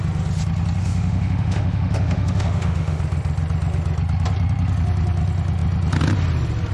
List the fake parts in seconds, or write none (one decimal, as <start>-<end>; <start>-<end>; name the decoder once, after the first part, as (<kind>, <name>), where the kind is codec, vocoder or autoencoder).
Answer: 0.8-3.0 (autoencoder, DAC-VAE)